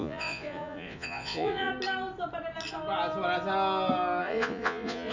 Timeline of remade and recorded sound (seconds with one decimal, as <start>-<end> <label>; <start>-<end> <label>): 0.0-1.7 remade; 1.7-4.2 recorded; 4.2-5.1 remade